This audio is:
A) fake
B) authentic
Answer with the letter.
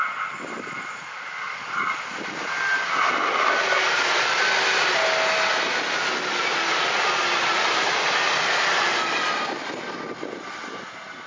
B